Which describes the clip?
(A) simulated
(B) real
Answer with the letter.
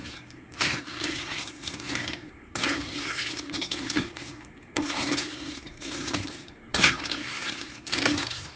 A